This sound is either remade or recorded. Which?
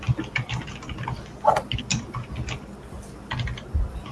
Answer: recorded